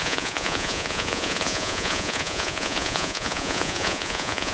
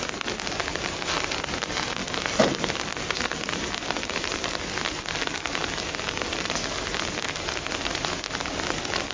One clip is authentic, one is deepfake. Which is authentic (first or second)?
second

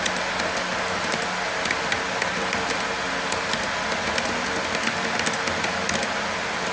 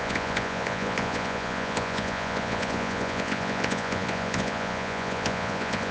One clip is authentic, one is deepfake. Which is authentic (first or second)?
first